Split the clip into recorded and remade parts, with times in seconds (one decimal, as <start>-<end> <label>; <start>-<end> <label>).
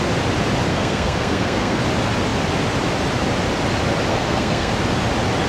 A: 0.0-0.7 recorded; 0.7-1.8 remade; 1.8-4.1 recorded; 4.1-4.7 remade; 4.7-5.5 recorded